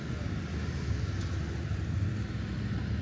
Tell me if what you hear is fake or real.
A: real